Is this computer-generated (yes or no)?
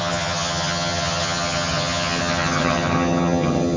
yes